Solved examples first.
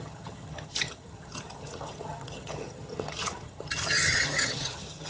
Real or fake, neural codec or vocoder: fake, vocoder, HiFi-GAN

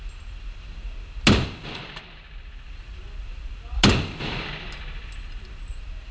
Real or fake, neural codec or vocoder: real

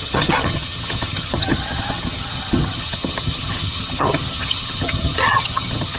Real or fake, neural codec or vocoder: fake, vocoder, HiFi-GAN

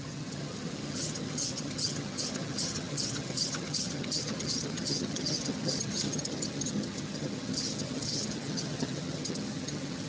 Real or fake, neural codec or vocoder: fake, vocoder, HiFi-GAN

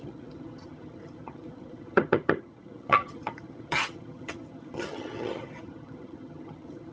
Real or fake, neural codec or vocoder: fake, vocoder, HiFi-GAN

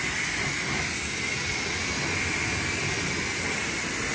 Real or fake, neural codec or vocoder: real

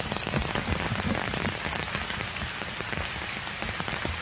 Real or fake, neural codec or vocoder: real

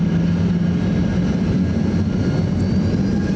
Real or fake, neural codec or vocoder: real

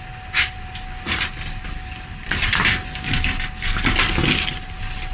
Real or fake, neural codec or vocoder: real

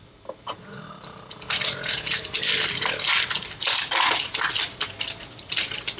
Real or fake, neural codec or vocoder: real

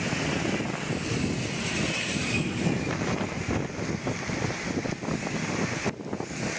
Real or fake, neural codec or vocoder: real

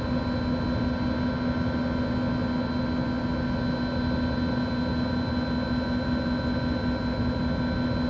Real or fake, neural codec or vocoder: real